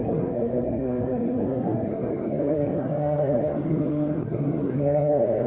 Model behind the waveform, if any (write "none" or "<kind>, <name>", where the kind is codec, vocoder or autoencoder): codec, SNAC